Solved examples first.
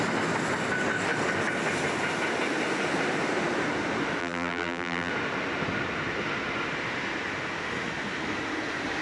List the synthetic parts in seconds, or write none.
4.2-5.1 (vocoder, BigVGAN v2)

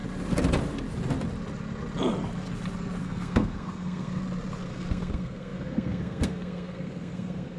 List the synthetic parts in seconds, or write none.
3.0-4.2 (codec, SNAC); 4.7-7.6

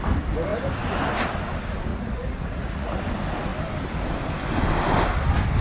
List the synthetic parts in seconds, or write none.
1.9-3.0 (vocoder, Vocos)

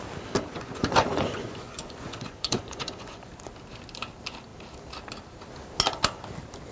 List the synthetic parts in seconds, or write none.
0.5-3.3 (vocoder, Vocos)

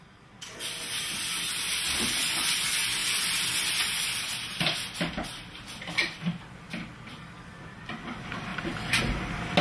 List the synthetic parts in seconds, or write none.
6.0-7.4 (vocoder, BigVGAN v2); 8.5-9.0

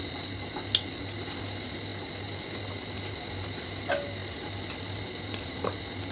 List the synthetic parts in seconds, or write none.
4.2-5.0 (vocoder, BigVGAN v2)